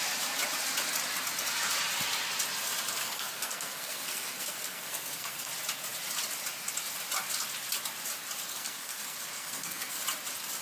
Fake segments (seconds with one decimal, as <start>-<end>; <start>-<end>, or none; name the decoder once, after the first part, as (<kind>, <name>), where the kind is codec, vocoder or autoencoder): 3.0-5.5 (codec, SNAC); 8.5-10.0